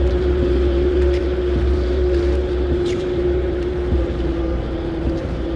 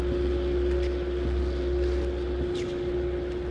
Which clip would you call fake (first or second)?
first